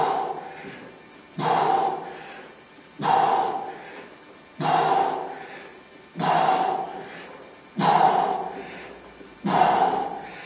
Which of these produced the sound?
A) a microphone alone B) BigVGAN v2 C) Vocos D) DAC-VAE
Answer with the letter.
A